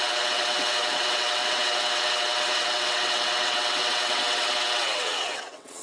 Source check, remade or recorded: remade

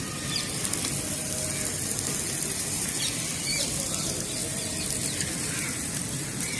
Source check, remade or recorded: recorded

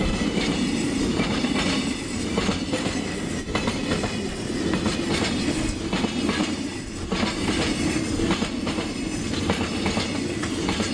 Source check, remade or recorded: recorded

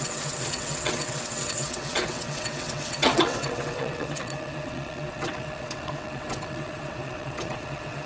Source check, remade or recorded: remade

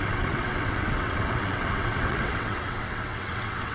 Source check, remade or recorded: remade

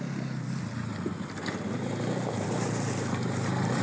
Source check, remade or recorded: recorded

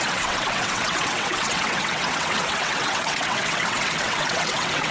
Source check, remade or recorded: remade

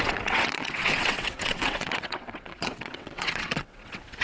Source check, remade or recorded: remade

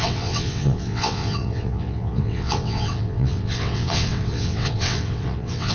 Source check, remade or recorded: remade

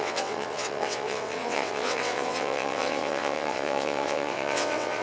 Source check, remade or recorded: remade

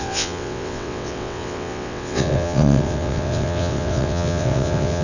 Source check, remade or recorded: remade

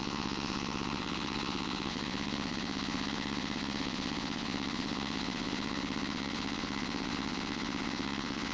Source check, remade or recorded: remade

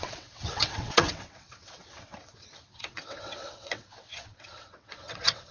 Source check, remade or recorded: remade